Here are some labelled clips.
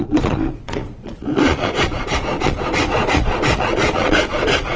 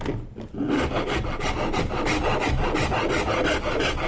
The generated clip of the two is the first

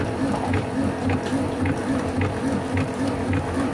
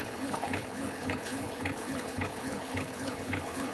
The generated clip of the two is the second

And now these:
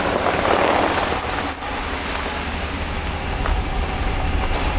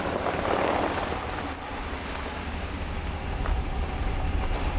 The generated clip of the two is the second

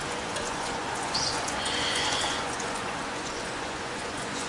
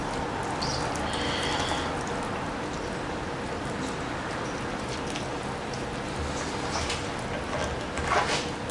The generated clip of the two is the first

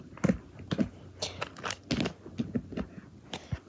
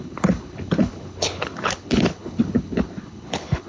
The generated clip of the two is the second